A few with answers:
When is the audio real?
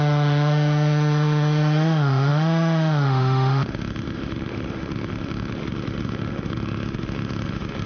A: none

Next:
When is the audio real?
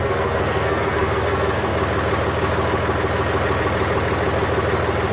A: 1.7-5.1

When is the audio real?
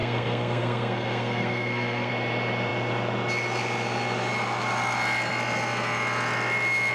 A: 2.1-6.9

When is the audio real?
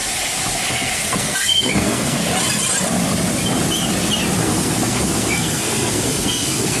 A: 0.0-0.7; 2.2-4.4